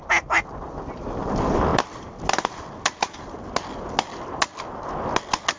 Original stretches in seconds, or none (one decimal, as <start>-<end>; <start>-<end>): 0.0-5.6